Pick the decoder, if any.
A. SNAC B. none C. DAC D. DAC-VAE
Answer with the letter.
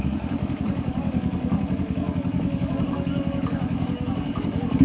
C